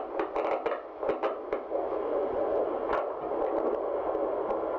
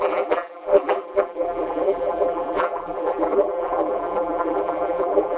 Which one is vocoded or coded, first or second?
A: second